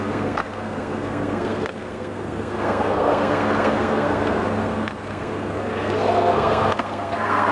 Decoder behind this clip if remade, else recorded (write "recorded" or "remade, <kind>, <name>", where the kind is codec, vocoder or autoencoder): remade, codec, SNAC